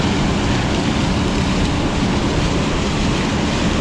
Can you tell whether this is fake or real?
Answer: real